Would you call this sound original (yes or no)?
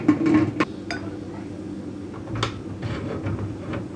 yes